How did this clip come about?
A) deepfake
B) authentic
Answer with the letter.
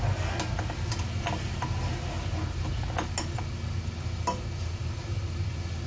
B